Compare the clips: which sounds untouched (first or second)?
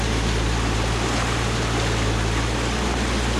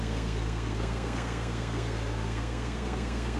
first